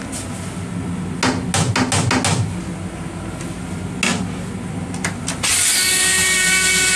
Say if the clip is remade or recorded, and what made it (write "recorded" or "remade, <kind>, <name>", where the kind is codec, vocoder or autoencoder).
recorded